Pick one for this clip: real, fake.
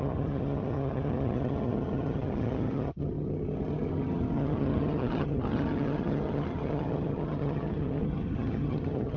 fake